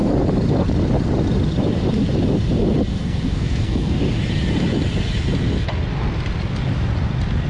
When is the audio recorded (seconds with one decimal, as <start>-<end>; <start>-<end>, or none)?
0.0-3.0; 4.0-7.5